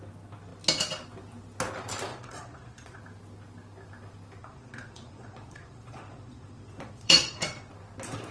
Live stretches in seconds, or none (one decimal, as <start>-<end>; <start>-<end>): 0.0-2.1; 3.0-4.4; 7.7-8.3